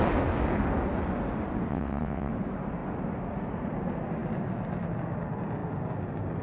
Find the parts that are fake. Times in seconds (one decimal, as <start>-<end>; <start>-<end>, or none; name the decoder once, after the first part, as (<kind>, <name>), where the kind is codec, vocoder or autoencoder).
1.7-2.3 (vocoder, WaveNeXt)